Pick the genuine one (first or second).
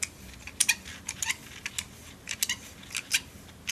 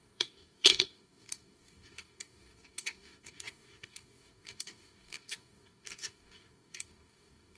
first